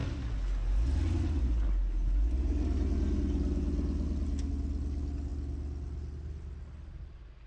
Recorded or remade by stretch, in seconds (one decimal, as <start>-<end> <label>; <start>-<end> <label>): 0.0-7.5 recorded